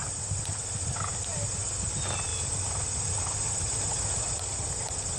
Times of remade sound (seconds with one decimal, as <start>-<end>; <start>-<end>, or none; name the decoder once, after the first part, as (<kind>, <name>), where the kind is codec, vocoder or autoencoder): none